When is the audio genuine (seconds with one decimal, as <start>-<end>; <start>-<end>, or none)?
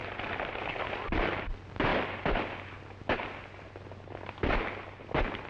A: 0.0-5.5